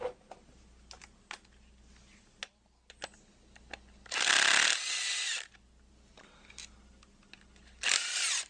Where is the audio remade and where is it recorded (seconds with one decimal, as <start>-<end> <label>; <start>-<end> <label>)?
0.0-8.5 recorded